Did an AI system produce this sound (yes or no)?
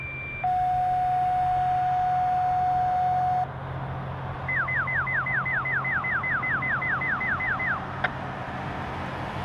no